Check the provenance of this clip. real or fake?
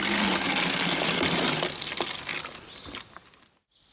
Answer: real